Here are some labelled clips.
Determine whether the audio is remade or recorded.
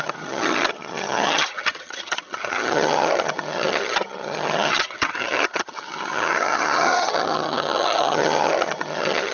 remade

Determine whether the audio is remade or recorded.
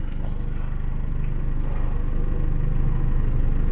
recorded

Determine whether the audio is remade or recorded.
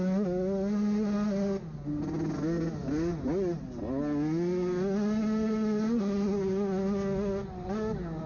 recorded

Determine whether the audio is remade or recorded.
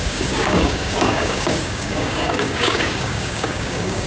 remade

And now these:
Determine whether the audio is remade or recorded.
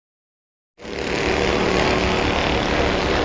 recorded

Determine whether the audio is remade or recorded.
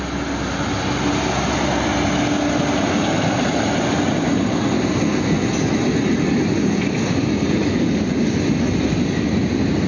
recorded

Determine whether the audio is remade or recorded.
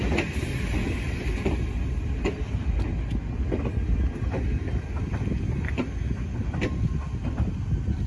recorded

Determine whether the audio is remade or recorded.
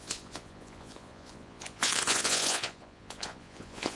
remade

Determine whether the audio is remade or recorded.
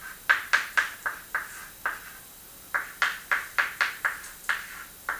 recorded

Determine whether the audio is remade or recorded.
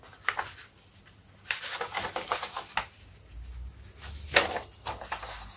recorded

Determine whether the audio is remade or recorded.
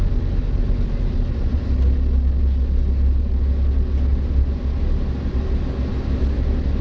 recorded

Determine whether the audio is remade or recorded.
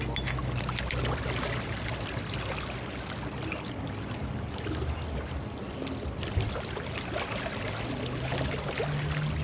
recorded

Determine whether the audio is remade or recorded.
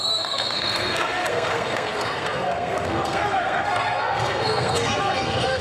remade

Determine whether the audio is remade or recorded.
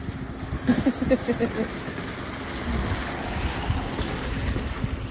recorded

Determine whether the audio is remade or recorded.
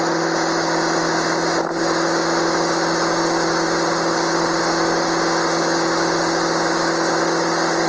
recorded